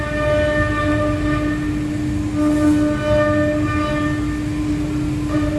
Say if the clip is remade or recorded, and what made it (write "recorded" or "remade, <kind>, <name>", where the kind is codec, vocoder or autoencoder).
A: recorded